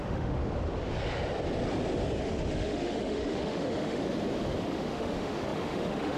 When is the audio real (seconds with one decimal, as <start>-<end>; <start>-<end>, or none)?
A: 0.4-2.2; 4.0-4.6